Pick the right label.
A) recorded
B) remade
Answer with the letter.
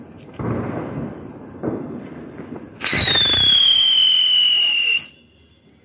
A